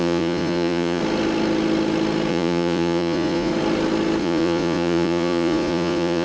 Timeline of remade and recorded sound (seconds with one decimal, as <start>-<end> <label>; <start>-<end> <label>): 0.0-1.0 remade; 1.0-2.3 recorded; 2.3-3.5 remade; 3.5-4.2 recorded; 4.2-6.2 remade